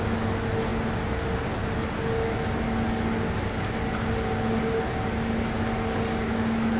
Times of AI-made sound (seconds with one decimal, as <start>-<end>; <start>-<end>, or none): none